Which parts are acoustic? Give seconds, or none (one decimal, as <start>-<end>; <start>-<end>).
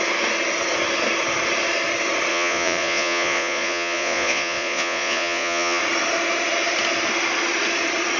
0.0-2.3; 5.8-8.2